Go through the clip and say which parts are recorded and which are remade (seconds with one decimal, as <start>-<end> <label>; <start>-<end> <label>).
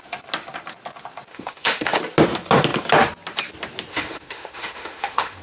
0.0-1.3 recorded; 1.3-2.0 remade; 2.0-3.9 recorded; 3.9-5.4 remade